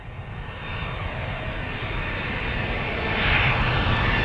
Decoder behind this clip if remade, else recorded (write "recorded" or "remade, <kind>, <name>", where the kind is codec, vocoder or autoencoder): recorded